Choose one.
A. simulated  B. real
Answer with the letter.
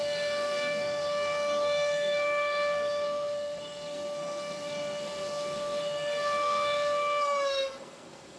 A